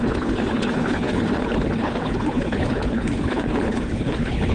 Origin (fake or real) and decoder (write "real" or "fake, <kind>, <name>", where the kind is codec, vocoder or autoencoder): fake, codec, HILCodec